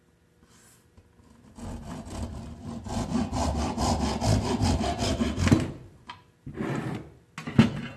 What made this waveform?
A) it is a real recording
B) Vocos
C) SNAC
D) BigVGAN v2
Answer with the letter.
A